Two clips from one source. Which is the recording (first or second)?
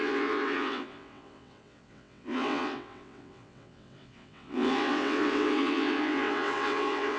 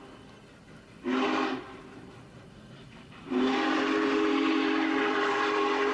second